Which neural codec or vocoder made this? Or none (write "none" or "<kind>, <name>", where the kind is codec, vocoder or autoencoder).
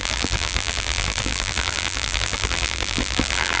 vocoder, BigVGAN v2